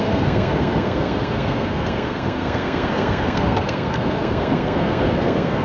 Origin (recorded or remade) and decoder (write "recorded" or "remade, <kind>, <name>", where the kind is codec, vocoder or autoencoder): remade, codec, SNAC